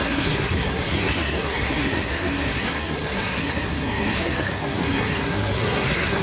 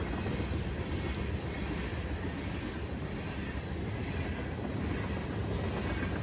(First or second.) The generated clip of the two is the first